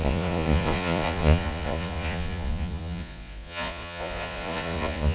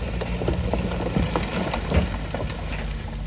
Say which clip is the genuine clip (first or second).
second